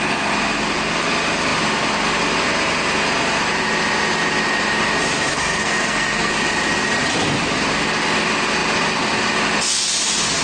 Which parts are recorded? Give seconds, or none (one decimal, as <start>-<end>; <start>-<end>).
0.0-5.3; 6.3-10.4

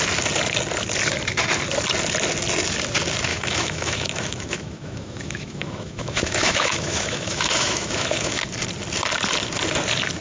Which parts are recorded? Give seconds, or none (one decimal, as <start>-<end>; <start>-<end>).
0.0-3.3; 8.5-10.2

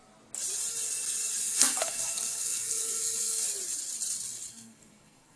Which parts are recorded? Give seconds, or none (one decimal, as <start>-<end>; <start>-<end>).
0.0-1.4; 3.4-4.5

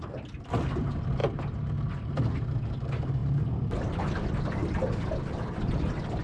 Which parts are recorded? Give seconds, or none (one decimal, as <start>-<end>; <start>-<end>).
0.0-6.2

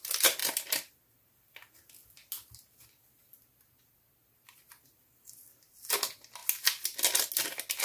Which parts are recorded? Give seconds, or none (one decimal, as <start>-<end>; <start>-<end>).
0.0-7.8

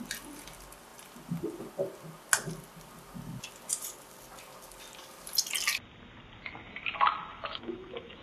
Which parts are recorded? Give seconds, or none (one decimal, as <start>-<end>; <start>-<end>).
0.0-7.3

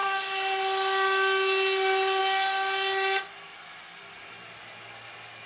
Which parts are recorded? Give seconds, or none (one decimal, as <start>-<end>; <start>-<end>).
0.0-5.5